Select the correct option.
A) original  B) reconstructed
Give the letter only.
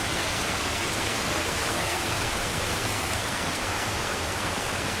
B